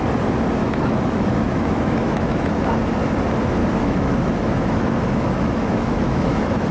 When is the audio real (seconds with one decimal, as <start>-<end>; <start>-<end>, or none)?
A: 0.0-0.6; 2.6-3.6